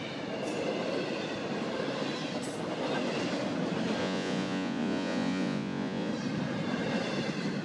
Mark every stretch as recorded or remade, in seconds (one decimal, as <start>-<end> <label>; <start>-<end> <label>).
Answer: 0.0-4.0 recorded; 4.0-6.1 remade; 6.1-7.6 recorded